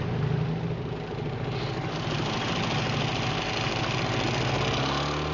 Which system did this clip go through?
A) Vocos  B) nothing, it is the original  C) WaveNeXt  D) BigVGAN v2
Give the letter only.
B